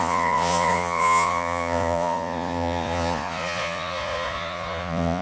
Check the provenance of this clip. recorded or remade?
remade